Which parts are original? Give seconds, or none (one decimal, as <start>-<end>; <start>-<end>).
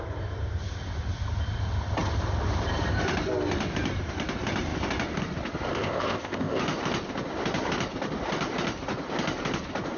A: 0.0-5.7; 6.6-10.0